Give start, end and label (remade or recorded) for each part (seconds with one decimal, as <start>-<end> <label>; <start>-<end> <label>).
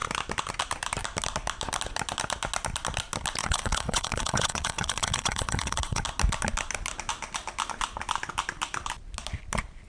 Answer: 0.0-3.4 recorded; 3.4-6.0 remade; 6.0-9.9 recorded